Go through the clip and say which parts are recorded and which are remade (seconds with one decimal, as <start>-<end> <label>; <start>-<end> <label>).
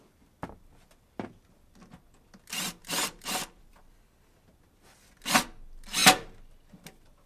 0.0-2.8 recorded; 2.8-4.0 remade; 4.0-7.3 recorded